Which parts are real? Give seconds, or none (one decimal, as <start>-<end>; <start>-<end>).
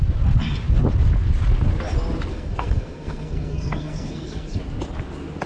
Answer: 0.0-2.3; 4.6-5.5